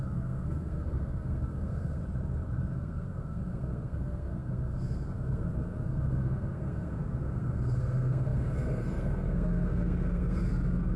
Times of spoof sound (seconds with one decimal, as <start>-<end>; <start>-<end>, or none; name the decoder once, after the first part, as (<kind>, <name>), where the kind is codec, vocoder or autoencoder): 0.0-2.0 (codec, SNAC); 2.6-11.0